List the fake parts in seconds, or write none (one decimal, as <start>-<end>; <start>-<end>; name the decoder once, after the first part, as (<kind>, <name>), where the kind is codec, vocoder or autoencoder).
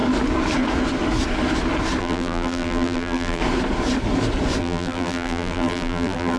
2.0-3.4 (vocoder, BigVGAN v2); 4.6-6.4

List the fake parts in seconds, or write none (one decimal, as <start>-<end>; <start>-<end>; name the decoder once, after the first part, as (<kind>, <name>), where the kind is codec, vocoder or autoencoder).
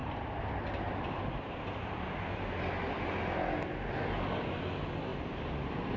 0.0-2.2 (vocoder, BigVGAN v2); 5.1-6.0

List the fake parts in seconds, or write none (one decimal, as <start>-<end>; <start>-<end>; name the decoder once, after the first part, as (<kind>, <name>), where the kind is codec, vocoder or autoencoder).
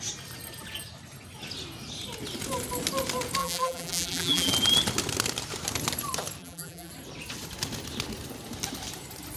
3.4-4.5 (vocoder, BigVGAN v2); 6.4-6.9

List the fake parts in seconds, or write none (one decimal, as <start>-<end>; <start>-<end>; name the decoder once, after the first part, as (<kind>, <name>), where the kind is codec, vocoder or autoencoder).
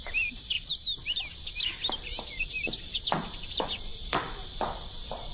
0.0-0.7 (vocoder, BigVGAN v2); 1.7-5.3